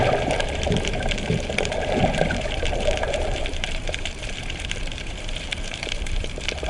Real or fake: fake